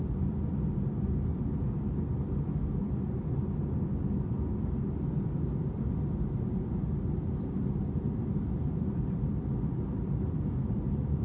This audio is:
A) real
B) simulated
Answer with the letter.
A